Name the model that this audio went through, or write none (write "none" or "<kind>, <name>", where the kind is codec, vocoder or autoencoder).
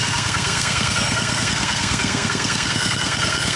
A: codec, SNAC